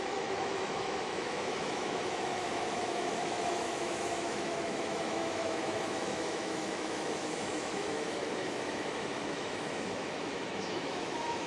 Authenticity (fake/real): fake